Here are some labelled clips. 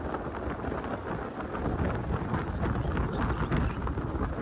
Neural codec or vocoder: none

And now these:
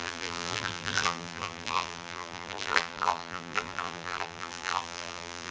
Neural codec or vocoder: vocoder, BigVGAN v2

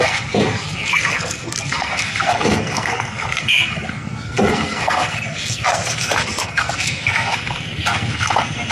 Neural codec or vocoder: codec, SNAC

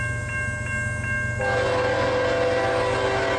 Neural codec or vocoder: none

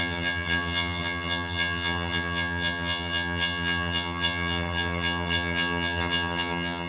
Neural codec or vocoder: vocoder, HiFi-GAN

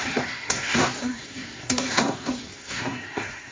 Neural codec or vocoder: codec, SNAC